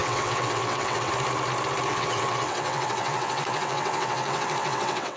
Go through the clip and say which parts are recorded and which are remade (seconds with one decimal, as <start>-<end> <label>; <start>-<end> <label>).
0.0-1.1 remade; 1.1-1.9 recorded; 1.9-5.2 remade